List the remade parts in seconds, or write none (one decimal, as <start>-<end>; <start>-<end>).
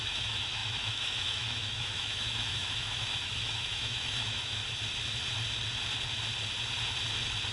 0.0-4.6